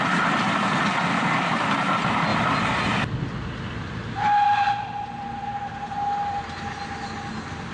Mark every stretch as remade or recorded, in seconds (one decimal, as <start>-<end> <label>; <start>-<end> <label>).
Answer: 0.0-7.7 recorded